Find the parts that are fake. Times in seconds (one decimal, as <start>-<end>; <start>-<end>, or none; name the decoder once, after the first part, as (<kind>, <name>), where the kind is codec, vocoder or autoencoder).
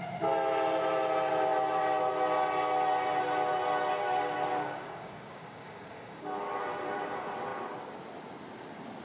4.0-6.5 (codec, DAC)